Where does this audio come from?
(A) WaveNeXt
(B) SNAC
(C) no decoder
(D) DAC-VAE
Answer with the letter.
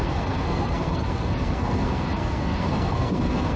B